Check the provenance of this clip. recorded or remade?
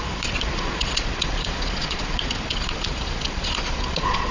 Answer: remade